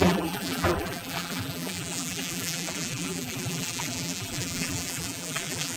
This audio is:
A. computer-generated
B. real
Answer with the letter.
A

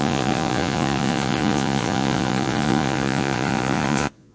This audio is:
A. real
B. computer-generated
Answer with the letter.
B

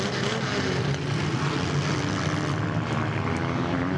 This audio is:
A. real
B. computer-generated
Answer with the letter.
A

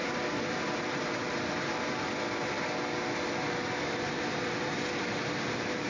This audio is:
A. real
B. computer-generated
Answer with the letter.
B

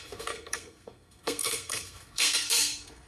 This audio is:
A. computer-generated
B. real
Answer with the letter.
A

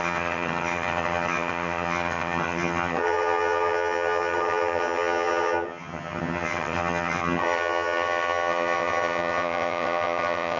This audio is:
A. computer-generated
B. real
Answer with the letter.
A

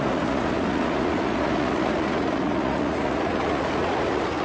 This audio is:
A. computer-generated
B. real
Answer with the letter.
A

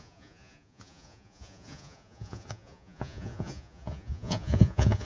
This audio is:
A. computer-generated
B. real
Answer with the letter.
A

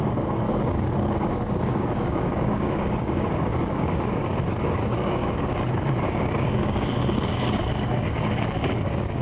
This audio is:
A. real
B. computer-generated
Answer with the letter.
B